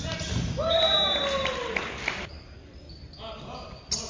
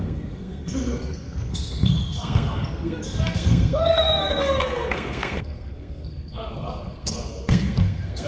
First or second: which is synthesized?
second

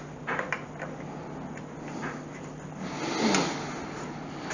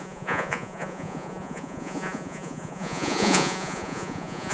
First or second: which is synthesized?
second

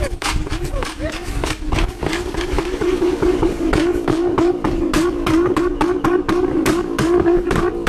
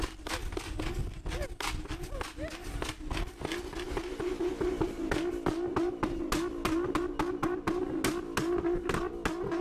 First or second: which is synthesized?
first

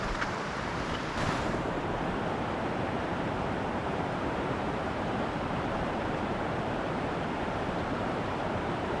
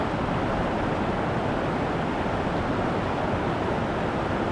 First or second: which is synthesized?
first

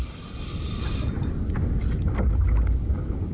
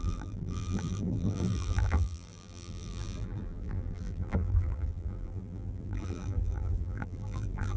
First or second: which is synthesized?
second